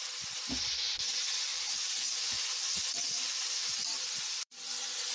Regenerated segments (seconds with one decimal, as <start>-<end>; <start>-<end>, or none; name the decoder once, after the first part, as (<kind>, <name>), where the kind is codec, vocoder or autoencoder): 1.5-4.6 (vocoder, BigVGAN v2)